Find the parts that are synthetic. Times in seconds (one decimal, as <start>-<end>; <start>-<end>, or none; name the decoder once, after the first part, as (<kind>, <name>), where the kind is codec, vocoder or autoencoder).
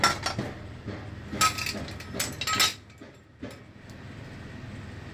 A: none